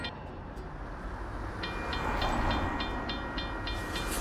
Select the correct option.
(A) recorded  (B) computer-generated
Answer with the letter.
A